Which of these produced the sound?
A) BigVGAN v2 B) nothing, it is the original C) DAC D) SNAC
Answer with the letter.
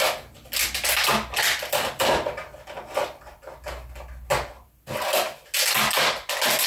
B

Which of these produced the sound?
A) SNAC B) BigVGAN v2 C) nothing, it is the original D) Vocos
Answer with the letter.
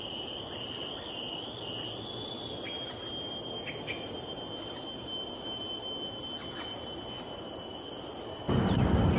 C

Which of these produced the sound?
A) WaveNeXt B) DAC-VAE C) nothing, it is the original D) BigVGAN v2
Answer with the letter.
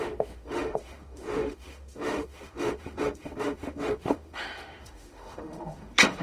B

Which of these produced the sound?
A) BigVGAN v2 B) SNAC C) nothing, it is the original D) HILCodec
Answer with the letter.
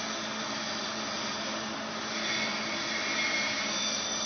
C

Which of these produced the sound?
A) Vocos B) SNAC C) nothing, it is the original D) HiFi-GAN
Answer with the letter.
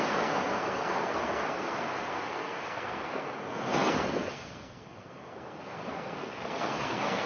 B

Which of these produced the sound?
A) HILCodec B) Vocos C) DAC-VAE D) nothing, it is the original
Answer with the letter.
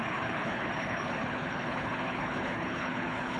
A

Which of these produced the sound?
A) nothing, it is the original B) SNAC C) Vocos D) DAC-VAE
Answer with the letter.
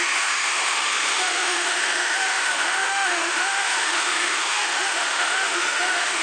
D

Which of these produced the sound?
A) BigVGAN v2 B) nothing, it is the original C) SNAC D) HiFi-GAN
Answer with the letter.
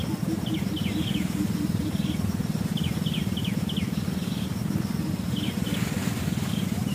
B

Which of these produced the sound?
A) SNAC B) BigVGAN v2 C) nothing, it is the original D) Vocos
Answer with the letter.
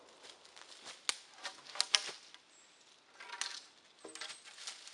C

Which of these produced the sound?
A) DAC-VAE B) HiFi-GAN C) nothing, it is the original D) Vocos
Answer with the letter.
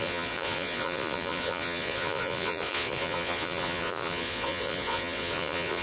D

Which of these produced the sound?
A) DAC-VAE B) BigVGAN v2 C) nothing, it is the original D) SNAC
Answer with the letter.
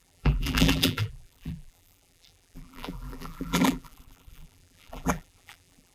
B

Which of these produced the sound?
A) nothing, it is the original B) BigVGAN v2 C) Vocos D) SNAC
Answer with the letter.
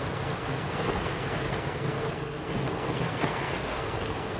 D